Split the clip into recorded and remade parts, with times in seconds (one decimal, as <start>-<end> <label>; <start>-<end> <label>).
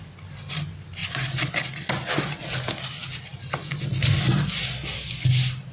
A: 0.0-1.0 recorded; 1.0-1.5 remade; 1.5-5.7 recorded